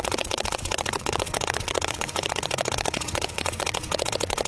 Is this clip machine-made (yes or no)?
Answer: yes